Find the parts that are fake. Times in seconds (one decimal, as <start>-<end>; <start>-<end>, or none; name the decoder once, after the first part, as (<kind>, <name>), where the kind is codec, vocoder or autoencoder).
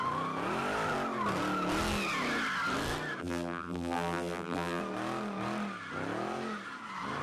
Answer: 3.2-4.8 (vocoder, BigVGAN v2)